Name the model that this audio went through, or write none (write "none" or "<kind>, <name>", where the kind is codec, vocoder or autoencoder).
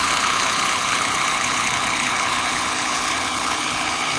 codec, HILCodec